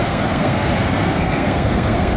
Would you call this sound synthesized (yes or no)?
yes